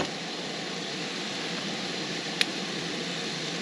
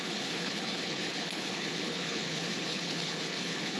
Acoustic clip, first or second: first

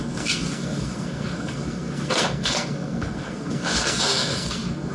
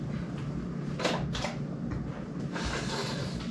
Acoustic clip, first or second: second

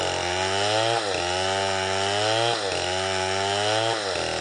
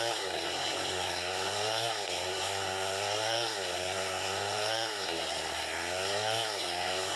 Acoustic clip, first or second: first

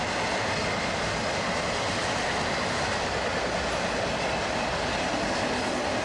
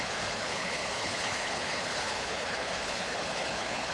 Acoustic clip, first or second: first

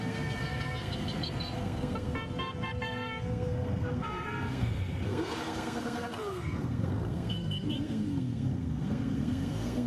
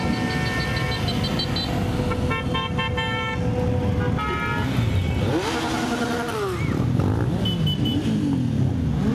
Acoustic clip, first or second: second